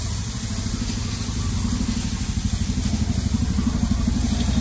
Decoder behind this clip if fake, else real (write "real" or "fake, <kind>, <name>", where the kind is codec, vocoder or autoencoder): real